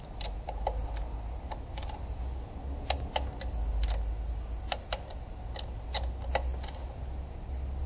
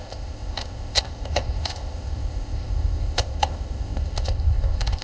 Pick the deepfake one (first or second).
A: second